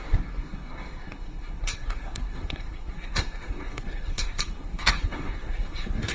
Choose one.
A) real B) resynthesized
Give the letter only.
B